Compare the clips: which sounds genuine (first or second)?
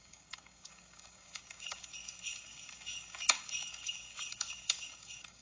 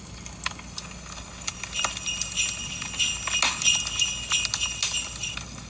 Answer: second